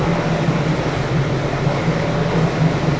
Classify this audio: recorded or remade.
recorded